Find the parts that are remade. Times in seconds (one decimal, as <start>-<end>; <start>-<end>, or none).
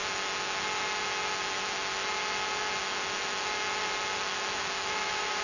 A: 4.3-5.4